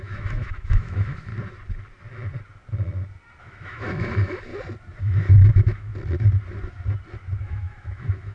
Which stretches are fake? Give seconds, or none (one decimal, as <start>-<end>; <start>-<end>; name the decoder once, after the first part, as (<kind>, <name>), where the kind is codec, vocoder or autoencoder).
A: 0.0-1.3 (autoencoder, DAC-VAE); 3.4-4.5; 5.0-5.9; 7.4-8.3